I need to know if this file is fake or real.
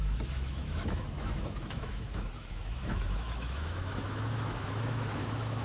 fake